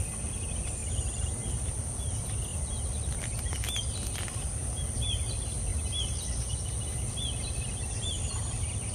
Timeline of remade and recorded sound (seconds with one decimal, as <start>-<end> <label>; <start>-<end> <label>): 0.0-2.5 recorded; 2.5-3.5 remade; 3.5-8.9 recorded